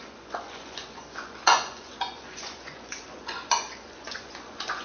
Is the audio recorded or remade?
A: remade